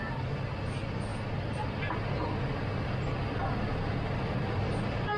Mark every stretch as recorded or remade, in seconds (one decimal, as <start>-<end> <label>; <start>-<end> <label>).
0.0-5.2 recorded